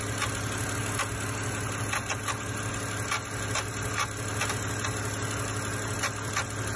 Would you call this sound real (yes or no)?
yes